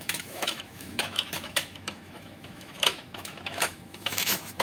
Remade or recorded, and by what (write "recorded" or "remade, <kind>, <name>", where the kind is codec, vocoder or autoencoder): remade, autoencoder, DAC-VAE